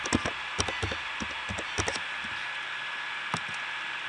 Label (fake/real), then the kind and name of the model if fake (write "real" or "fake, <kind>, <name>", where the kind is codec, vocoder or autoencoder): real